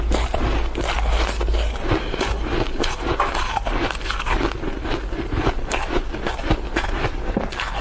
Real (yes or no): yes